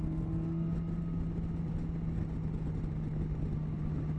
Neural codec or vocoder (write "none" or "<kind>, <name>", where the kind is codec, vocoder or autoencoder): none